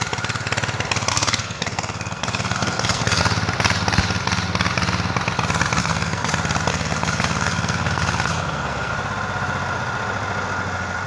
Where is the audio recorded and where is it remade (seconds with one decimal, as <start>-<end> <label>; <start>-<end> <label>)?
0.0-1.1 recorded; 1.1-3.2 remade; 3.2-5.8 recorded; 5.8-6.3 remade; 6.3-6.7 recorded; 6.7-8.9 remade; 8.9-11.1 recorded